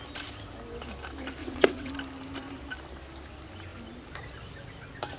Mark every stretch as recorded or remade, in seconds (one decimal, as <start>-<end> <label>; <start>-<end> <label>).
0.0-1.4 recorded; 1.4-1.9 remade; 1.9-5.2 recorded